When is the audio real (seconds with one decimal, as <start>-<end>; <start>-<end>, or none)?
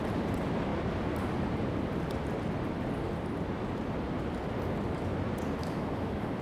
0.0-5.6